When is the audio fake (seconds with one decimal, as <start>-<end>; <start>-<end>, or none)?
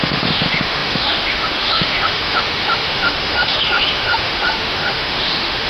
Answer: 0.0-5.7